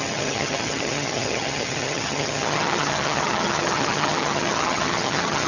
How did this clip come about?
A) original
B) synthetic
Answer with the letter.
B